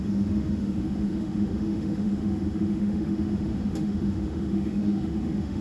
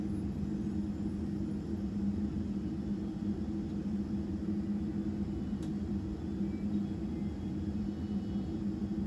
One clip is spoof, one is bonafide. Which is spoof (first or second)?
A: first